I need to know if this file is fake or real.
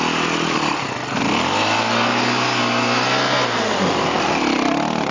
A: real